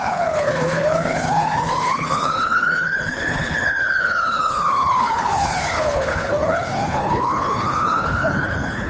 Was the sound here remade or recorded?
remade